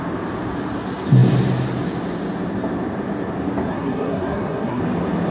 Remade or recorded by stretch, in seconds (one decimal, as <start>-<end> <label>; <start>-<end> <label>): 0.0-3.7 recorded; 3.7-4.8 remade; 4.8-5.3 recorded